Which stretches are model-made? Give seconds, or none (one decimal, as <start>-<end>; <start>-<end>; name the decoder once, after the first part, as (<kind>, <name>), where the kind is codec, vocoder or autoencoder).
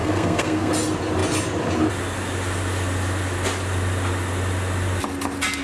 0.0-0.7 (codec, SNAC)